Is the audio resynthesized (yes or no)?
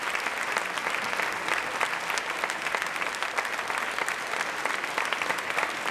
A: no